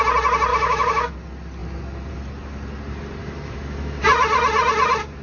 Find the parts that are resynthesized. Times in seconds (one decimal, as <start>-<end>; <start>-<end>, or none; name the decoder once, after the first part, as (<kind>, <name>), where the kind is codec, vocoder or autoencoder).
0.5-1.1 (autoencoder, DAC-VAE); 3.2-4.0